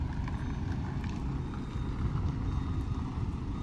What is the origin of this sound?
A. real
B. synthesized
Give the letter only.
A